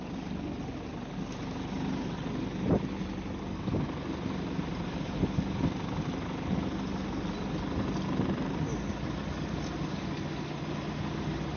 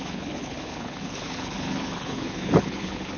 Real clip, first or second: first